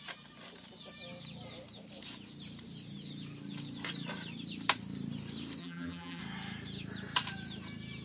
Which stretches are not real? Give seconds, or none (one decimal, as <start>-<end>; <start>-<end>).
5.6-6.2